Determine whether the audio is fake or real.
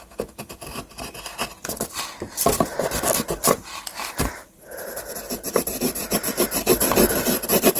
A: real